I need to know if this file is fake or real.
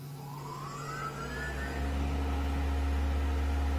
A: real